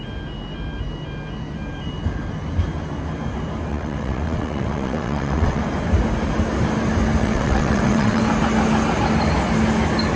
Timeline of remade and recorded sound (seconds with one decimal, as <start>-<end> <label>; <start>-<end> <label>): 0.0-3.7 recorded; 3.7-5.6 remade; 5.6-7.2 recorded; 7.2-8.2 remade; 8.2-10.2 recorded